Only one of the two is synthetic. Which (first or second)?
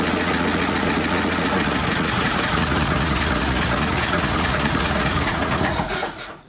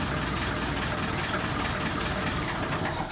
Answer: first